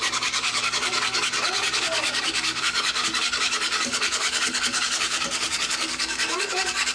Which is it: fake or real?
fake